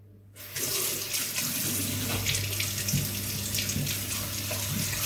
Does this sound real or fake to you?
real